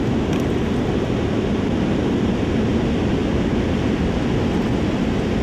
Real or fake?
real